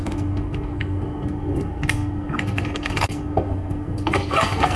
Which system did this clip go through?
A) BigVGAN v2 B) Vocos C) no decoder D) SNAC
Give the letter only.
D